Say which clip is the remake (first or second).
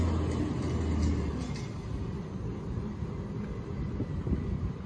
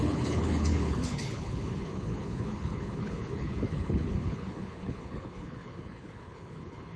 second